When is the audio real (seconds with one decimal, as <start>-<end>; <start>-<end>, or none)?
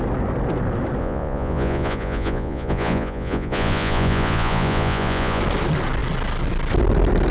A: 0.0-1.0; 5.4-7.3